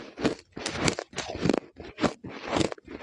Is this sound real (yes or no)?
yes